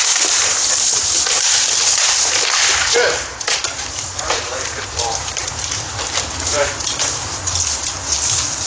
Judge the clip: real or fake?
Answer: fake